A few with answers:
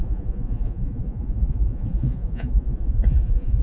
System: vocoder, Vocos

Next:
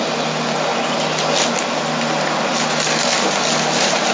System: none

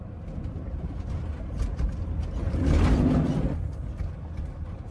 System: none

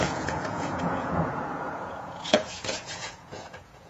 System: vocoder, Vocos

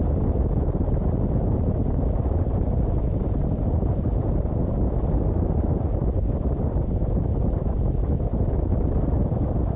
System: none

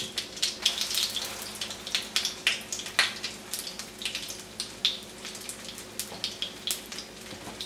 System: none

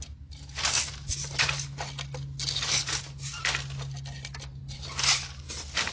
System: none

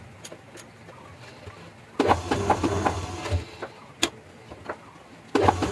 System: none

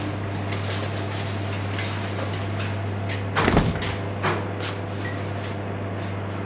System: none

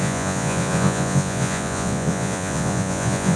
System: vocoder, Vocos